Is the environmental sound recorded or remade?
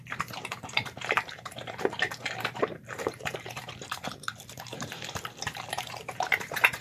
remade